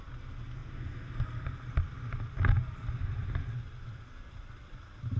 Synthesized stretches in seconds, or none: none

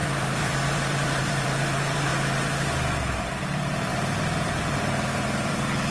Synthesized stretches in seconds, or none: 0.0-2.1 (vocoder, BigVGAN v2); 3.2-5.9

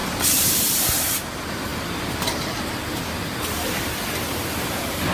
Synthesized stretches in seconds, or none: 0.0-1.7 (vocoder, BigVGAN v2); 4.2-5.1

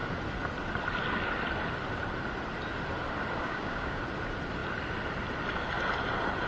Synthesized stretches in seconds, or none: 3.4-4.0 (codec, DAC)

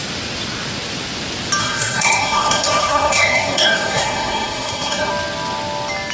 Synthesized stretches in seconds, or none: 1.6-5.1 (codec, SNAC)

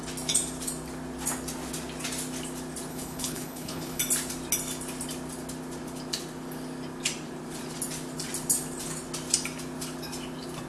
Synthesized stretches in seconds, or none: 2.9-4.0 (codec, HILCodec)

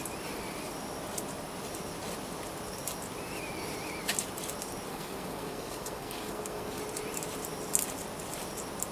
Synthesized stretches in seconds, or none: 4.9-6.8 (codec, SNAC)

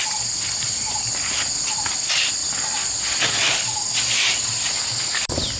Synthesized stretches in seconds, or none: none